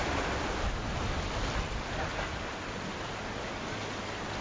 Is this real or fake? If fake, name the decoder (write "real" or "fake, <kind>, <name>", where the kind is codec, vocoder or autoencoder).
real